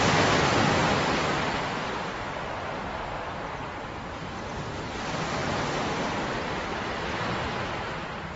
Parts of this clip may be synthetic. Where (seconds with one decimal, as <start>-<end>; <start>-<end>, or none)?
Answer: none